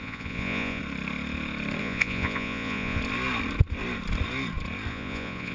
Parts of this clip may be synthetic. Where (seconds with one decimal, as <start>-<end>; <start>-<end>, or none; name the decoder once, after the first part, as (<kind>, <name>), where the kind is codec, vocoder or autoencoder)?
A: 0.0-0.8 (vocoder, Vocos); 1.8-3.0; 4.9-5.5